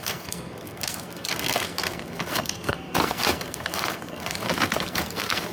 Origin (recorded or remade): remade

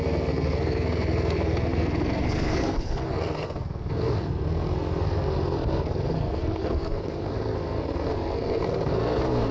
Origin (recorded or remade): remade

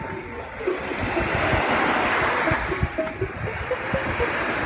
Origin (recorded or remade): recorded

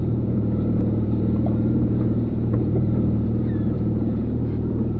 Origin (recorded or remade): remade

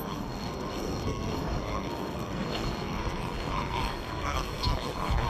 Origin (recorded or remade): remade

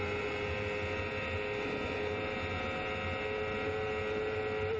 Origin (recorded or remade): recorded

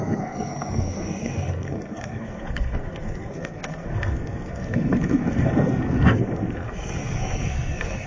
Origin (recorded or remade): remade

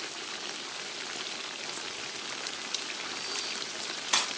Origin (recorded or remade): recorded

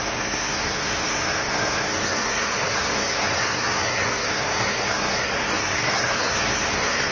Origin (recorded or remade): remade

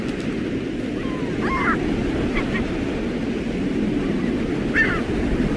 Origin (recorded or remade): recorded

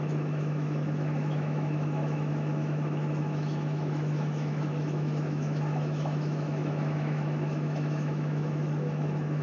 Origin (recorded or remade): remade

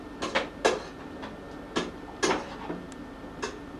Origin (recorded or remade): recorded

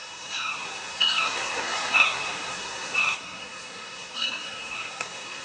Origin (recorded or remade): remade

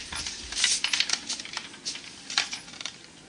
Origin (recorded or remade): recorded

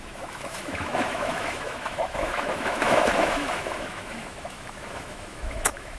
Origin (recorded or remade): remade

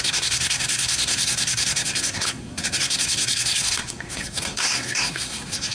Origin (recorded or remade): remade